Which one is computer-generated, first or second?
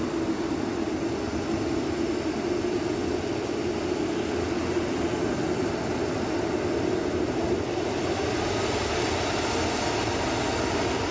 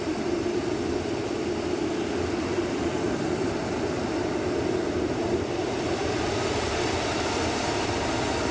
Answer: second